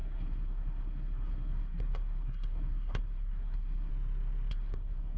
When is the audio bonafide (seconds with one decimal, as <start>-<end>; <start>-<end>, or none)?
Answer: 3.9-4.5